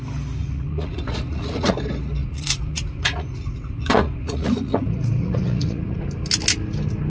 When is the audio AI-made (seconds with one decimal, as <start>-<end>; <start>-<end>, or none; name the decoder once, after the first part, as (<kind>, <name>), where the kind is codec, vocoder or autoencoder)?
0.4-1.7 (vocoder, Vocos); 2.2-6.0